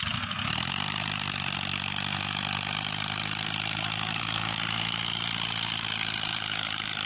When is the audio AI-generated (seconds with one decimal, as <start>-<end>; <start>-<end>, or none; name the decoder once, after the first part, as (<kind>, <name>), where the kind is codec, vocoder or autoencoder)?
6.3-7.1 (vocoder, BigVGAN v2)